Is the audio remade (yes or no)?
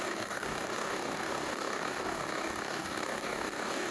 yes